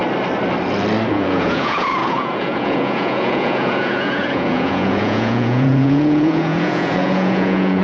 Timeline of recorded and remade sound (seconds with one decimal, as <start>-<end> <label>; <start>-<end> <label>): 0.0-1.1 recorded; 1.1-7.8 remade